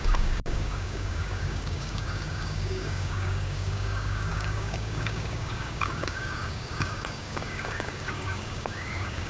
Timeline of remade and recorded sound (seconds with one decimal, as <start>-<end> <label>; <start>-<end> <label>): 0.0-9.3 remade